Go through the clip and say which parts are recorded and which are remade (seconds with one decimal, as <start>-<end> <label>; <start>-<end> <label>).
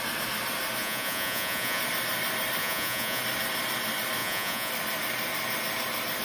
0.0-0.8 recorded; 0.8-1.8 remade; 1.8-2.6 recorded; 2.6-3.2 remade; 3.2-4.2 recorded; 4.2-4.7 remade; 4.7-6.2 recorded